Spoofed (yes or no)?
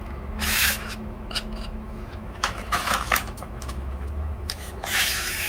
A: yes